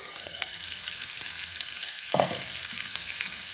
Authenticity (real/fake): fake